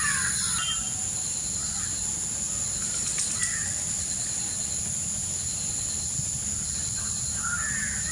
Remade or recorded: recorded